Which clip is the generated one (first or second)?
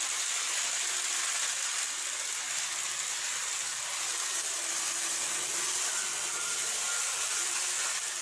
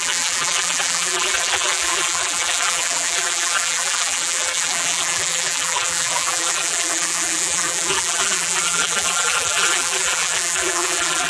second